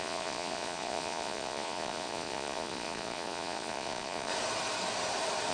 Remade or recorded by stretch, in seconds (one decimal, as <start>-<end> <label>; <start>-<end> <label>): 0.0-4.3 remade; 4.3-5.5 recorded